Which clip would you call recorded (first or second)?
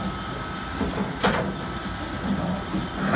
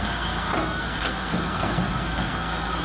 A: first